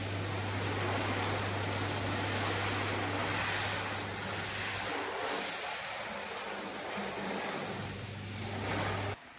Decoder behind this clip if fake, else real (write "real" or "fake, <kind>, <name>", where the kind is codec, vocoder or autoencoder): real